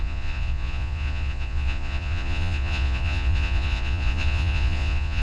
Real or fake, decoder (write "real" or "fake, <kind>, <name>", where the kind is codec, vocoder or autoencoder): fake, vocoder, Vocos